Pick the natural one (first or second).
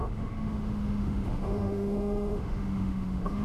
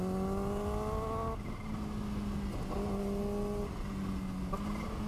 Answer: second